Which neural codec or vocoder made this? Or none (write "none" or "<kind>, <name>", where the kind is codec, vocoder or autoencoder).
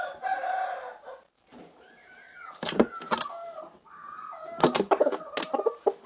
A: none